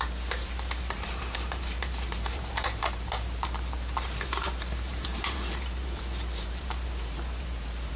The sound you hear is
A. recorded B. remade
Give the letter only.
B